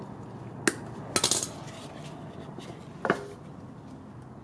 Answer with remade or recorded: recorded